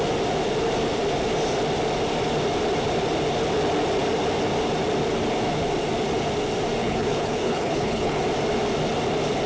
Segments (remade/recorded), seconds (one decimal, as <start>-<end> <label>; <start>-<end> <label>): 0.0-6.8 recorded; 6.8-8.2 remade; 8.2-9.5 recorded